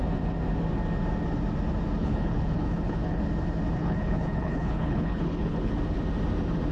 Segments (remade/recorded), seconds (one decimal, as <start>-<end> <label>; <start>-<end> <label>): 0.0-2.0 recorded; 2.0-3.2 remade; 3.2-3.8 recorded; 3.8-5.7 remade; 5.7-6.7 recorded

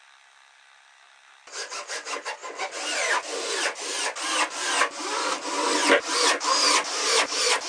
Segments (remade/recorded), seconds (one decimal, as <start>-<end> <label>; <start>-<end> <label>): 0.0-7.7 recorded